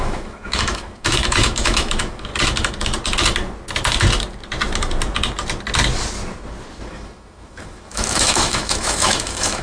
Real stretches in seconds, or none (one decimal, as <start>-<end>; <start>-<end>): 2.3-6.9